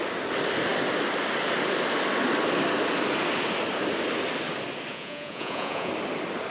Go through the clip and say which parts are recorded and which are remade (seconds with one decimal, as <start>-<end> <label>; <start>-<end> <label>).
0.0-4.9 recorded; 4.9-5.9 remade; 5.9-6.5 recorded